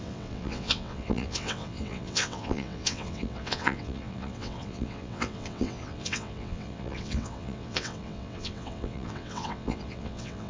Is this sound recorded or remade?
remade